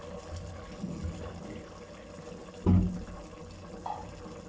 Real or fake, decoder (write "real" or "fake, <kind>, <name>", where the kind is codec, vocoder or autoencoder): real